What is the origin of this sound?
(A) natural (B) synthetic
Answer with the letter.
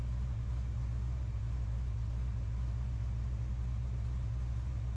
A